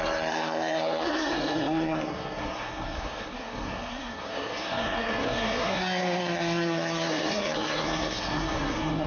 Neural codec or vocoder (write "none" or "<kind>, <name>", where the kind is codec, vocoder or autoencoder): codec, SNAC